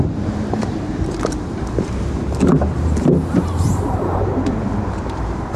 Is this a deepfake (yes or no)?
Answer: yes